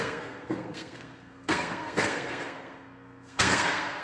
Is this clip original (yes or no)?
no